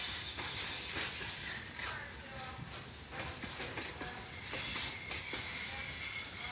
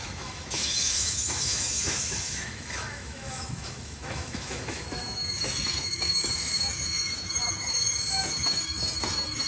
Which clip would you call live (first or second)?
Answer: first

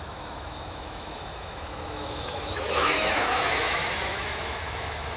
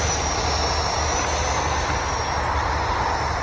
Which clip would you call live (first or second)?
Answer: second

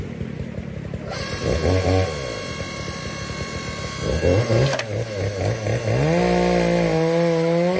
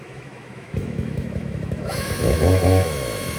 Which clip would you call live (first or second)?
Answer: first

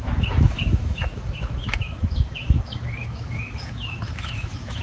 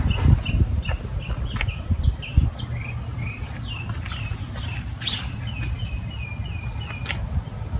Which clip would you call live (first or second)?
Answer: second